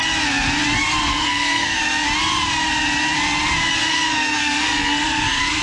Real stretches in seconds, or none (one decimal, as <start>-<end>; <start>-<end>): 0.0-1.1; 1.8-3.9